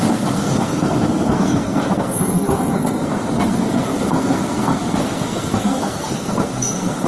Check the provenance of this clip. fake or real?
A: fake